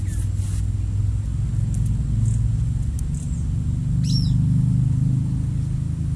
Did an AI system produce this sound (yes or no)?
no